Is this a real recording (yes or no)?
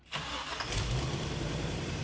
no